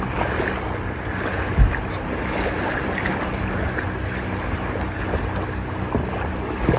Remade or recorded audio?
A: recorded